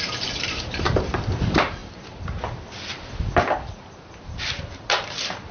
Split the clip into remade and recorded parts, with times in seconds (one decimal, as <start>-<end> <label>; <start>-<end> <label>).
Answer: 0.0-1.8 remade; 1.8-4.2 recorded; 4.2-5.5 remade